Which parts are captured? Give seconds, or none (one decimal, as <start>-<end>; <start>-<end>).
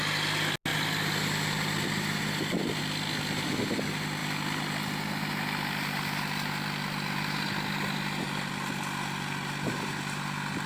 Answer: 0.0-10.7